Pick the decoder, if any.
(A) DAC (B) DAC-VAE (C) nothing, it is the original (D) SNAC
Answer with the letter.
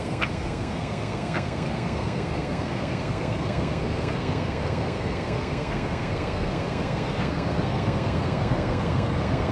D